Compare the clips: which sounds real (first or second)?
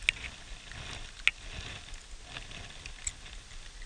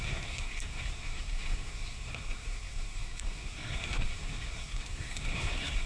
first